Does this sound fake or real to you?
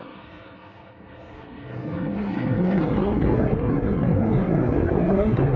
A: fake